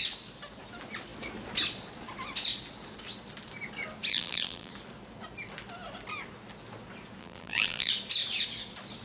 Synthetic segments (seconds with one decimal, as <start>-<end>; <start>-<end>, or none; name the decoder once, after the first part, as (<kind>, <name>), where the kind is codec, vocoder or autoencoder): 4.1-4.7 (vocoder, BigVGAN v2); 7.2-7.9